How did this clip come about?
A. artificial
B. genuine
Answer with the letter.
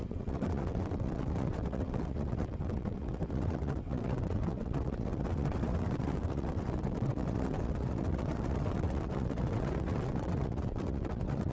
A